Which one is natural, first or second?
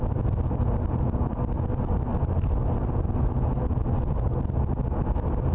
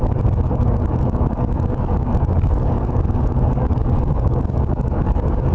first